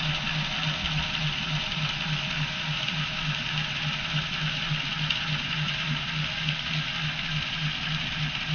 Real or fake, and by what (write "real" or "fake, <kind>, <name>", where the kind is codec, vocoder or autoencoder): real